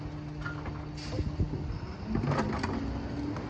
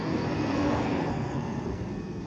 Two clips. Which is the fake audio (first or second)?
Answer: second